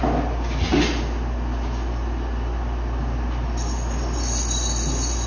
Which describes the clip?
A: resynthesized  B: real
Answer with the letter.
B